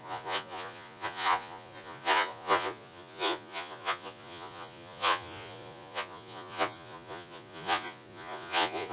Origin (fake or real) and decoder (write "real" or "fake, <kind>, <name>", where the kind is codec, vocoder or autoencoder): fake, vocoder, Vocos